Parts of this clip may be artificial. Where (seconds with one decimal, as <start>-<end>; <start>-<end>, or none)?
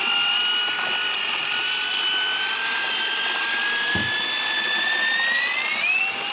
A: none